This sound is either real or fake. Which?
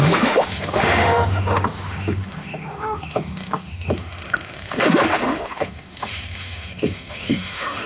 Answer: fake